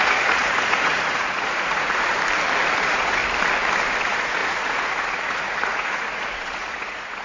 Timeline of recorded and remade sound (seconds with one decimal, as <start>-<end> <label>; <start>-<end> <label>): 0.0-2.1 remade; 2.1-2.7 recorded; 2.7-3.2 remade; 3.2-4.0 recorded; 4.0-7.2 remade